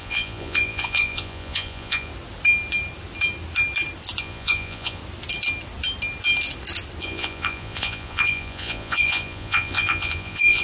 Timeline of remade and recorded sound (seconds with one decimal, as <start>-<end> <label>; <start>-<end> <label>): 0.0-2.1 remade; 2.1-4.2 recorded; 4.2-5.0 remade; 5.0-7.0 recorded; 7.0-10.6 remade